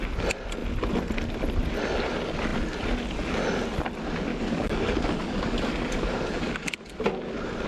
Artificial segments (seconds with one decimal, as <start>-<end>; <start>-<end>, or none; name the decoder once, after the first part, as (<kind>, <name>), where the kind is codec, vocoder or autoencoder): 4.3-7.0 (codec, DAC)